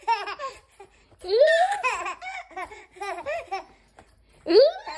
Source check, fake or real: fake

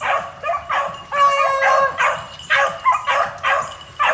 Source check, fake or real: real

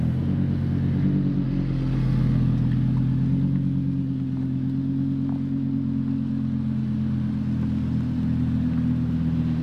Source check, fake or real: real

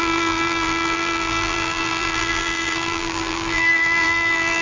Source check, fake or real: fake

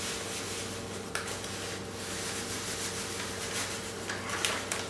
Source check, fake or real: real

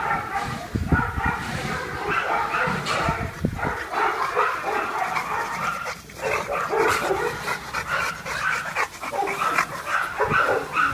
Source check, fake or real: real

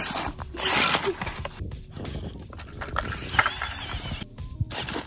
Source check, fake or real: real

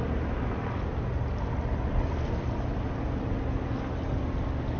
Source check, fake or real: real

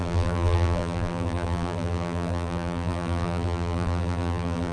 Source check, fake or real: fake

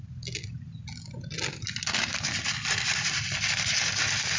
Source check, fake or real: real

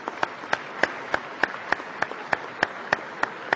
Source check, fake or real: real